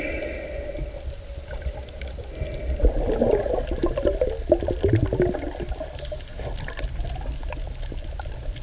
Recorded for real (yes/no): yes